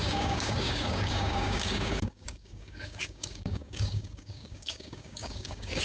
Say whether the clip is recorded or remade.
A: remade